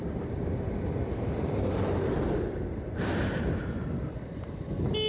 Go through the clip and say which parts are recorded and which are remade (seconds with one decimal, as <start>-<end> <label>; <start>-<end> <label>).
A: 0.0-3.8 remade; 3.8-4.5 recorded; 4.5-5.1 remade